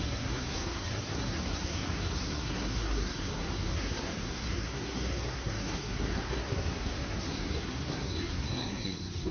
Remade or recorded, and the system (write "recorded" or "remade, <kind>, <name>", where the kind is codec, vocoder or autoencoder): remade, codec, SNAC